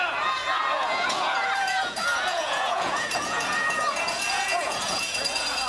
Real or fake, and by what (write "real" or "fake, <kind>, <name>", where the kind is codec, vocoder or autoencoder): fake, vocoder, Vocos